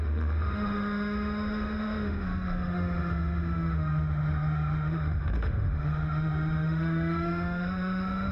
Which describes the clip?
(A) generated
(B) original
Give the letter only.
A